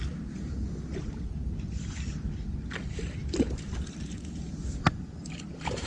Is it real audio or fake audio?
real